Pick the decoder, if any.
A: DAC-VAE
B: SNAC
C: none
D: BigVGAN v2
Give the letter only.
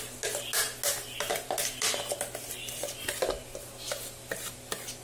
C